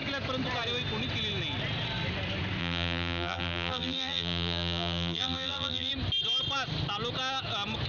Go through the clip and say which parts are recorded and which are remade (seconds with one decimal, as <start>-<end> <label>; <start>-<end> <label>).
0.0-2.6 recorded; 2.6-5.9 remade; 5.9-7.9 recorded